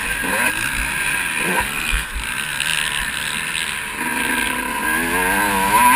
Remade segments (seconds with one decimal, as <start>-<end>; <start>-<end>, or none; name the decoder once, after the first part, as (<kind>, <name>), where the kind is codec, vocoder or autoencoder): 1.5-2.1 (codec, SNAC)